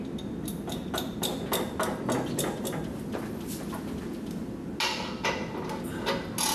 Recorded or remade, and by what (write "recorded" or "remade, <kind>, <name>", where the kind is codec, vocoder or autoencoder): recorded